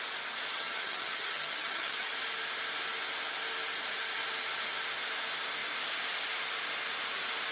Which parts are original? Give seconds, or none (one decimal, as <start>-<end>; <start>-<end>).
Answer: 0.0-0.5; 2.1-7.5